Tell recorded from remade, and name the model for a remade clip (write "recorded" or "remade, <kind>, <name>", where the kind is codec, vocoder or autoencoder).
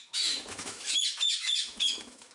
remade, autoencoder, DAC-VAE